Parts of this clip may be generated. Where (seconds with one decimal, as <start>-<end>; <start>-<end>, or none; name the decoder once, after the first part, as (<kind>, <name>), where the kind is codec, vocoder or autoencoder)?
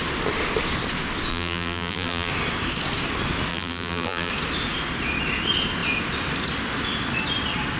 1.3-2.3 (vocoder, BigVGAN v2); 3.5-4.3